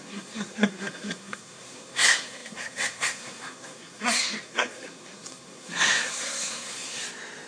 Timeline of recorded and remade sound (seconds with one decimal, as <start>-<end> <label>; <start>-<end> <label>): 0.0-7.0 remade; 7.0-7.5 recorded